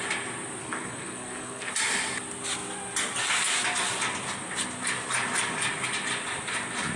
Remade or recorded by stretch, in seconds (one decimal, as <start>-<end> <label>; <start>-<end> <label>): 0.0-0.6 recorded; 0.6-1.7 remade; 1.7-7.0 recorded